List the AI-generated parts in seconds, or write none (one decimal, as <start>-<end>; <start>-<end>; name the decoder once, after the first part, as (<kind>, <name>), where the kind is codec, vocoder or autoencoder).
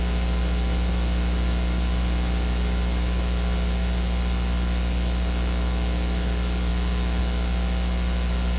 none